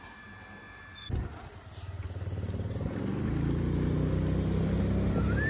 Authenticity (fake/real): real